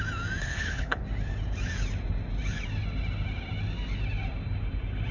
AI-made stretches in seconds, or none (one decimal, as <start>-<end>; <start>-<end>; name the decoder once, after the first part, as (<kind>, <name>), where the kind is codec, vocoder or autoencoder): 0.4-1.0 (codec, HILCodec)